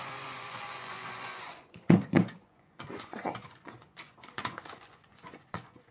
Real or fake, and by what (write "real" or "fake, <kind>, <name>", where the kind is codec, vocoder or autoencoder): fake, vocoder, Vocos